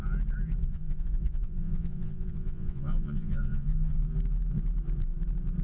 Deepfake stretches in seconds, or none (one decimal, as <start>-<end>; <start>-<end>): 0.6-4.0